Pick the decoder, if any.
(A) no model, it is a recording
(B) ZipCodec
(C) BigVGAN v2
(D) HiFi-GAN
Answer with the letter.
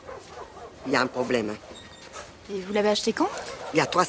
C